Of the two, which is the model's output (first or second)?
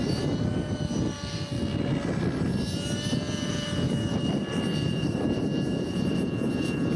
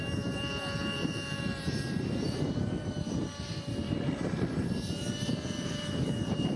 second